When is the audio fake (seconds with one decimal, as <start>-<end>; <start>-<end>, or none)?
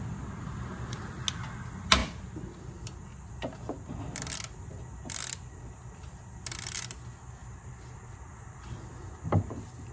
none